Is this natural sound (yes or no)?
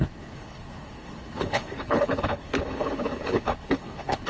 no